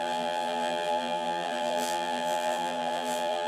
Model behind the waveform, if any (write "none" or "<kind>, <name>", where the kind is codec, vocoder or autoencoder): vocoder, BigVGAN v2